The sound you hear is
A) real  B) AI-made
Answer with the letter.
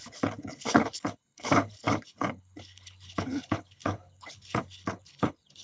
B